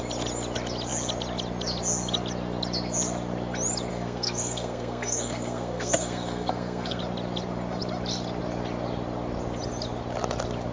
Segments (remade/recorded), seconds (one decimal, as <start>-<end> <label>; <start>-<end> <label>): 0.0-3.9 recorded; 3.9-7.0 remade; 7.0-10.7 recorded